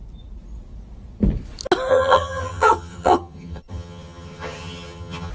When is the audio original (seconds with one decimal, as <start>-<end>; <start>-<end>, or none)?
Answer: 0.0-1.9